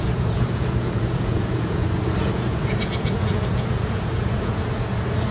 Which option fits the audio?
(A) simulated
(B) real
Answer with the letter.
A